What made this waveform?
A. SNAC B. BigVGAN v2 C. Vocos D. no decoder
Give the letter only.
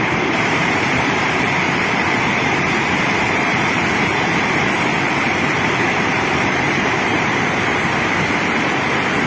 B